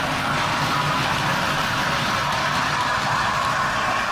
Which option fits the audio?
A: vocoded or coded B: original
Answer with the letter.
B